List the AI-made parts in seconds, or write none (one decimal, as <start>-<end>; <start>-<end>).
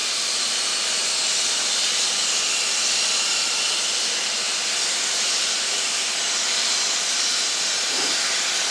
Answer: 0.0-0.7